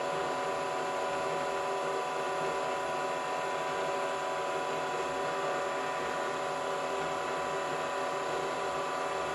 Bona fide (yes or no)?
yes